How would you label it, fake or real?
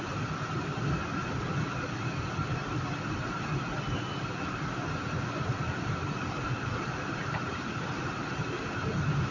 real